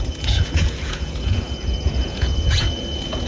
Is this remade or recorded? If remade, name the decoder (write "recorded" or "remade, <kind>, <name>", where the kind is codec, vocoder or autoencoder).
remade, vocoder, Vocos